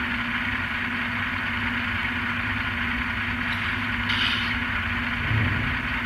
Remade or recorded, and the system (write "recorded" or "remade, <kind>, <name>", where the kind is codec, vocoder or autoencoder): recorded